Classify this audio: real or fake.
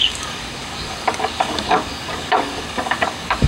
fake